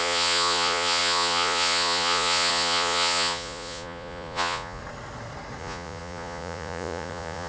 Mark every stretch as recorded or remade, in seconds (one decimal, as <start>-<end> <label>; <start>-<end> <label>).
0.0-4.8 remade; 4.8-5.6 recorded; 5.6-7.5 remade